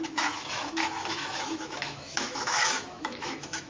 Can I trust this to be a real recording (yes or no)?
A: no